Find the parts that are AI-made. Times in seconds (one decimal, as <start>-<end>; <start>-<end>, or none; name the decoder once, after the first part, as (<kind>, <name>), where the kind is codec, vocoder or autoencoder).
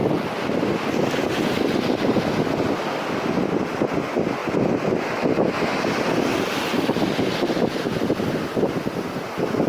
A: none